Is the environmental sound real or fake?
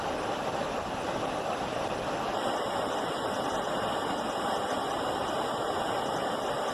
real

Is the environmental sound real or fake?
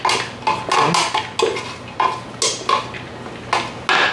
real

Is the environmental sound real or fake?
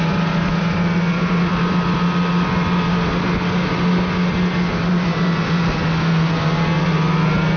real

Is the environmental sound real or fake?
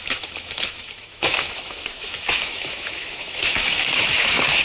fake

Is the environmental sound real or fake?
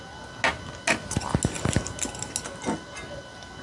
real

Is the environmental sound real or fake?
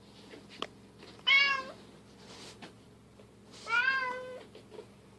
real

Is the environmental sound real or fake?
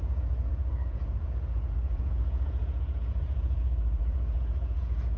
fake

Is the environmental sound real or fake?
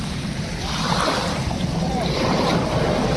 real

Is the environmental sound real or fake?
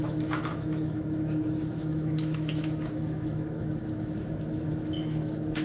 fake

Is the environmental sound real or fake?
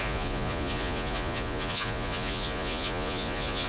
fake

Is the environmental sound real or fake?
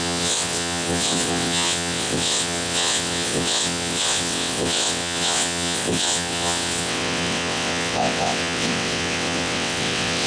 fake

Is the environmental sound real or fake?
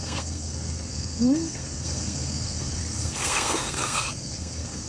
fake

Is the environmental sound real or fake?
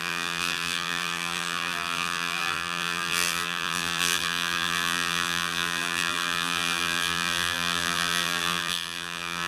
fake